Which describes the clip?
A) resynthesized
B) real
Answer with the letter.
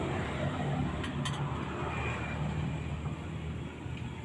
B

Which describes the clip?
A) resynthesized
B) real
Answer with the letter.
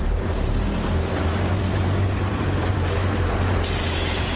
A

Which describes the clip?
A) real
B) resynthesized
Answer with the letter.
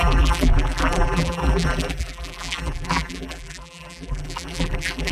B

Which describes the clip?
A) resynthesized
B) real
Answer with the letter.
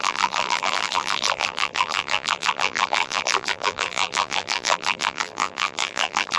A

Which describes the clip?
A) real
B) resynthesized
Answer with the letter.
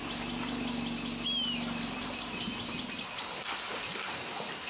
A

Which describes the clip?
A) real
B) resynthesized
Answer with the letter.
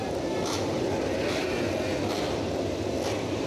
A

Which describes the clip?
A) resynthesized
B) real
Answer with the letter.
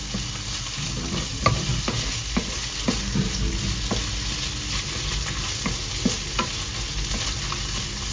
B